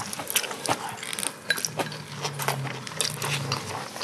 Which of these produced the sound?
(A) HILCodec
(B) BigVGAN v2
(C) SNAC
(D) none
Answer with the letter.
D